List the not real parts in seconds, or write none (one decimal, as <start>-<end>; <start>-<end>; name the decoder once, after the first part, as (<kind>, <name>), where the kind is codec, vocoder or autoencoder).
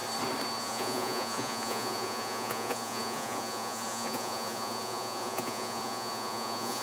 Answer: 0.6-6.8 (vocoder, Vocos)